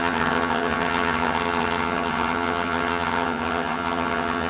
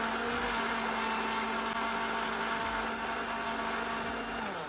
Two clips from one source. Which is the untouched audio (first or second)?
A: second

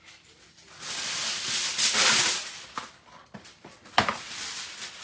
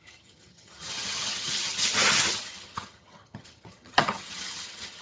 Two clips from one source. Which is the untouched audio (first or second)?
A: first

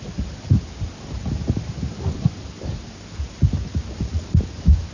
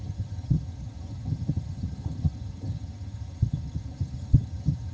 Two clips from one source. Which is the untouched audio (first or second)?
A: first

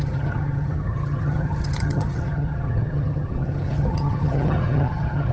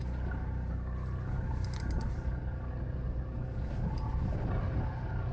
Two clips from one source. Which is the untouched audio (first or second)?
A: second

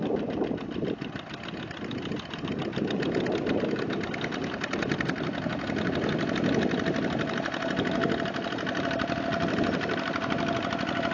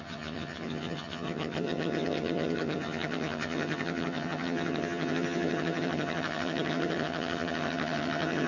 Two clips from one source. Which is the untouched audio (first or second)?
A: first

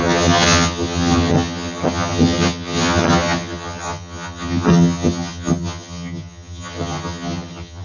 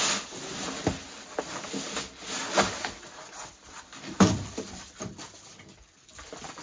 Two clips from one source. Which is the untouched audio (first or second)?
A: second